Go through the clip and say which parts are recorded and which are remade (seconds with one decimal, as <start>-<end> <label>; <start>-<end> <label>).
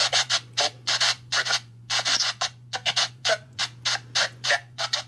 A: 0.0-3.6 remade; 3.6-4.2 recorded; 4.2-5.1 remade